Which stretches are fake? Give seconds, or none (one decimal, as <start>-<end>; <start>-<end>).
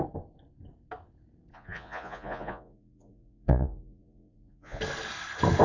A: 1.5-4.8